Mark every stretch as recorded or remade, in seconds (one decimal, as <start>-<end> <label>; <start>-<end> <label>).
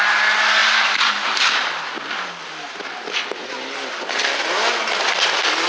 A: 0.0-5.7 recorded